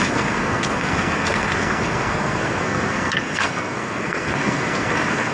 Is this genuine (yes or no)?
no